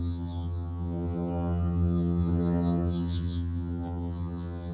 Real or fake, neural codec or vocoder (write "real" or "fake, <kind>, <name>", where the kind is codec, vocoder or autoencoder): fake, vocoder, HiFi-GAN